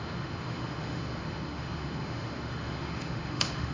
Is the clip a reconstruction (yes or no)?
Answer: yes